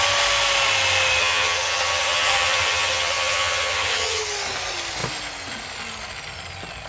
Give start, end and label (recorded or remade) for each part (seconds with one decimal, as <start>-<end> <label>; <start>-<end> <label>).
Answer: 0.0-1.2 recorded; 1.2-4.2 remade; 4.2-6.9 recorded